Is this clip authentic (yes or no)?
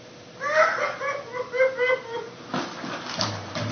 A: yes